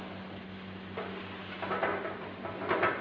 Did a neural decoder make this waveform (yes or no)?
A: no